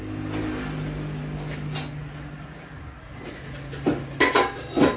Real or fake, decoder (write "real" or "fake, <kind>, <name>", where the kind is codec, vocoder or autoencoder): real